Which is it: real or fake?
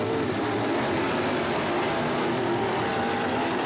real